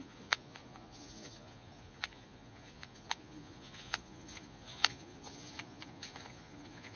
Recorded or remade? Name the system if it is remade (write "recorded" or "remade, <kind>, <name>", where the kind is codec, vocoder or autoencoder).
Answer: remade, vocoder, Vocos